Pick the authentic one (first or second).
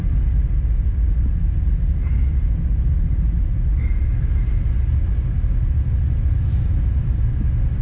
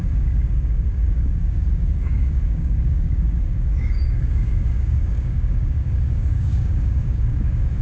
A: first